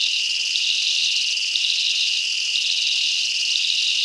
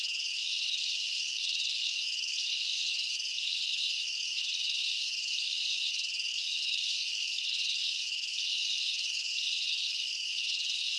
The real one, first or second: first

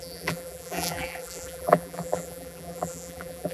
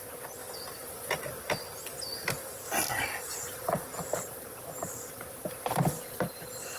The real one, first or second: second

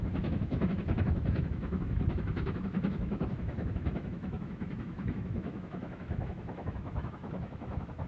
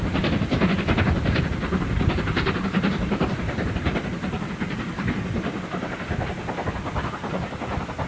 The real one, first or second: second